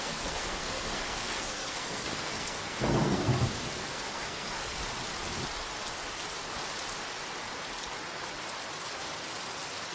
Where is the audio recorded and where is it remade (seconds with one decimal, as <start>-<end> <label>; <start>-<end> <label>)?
0.0-4.8 remade; 4.8-9.9 recorded